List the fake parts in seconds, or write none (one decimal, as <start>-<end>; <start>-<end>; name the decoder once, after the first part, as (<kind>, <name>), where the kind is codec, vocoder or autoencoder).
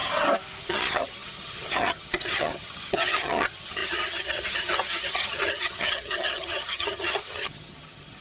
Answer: 0.6-8.2 (vocoder, HiFi-GAN)